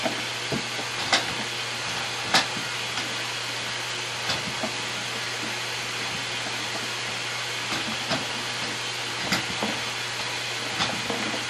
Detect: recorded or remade recorded